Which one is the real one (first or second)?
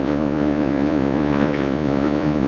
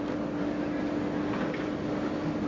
second